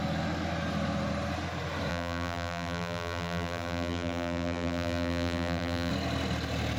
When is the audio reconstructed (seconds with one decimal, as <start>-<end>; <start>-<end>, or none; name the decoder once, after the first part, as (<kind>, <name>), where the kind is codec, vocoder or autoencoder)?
1.9-5.9 (vocoder, BigVGAN v2)